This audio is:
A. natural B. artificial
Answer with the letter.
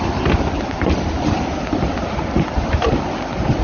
A